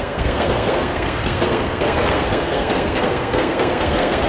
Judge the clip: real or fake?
fake